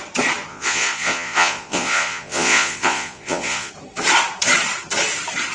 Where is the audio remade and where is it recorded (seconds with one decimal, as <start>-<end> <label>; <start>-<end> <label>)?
0.0-0.5 recorded; 0.5-3.7 remade; 3.7-5.5 recorded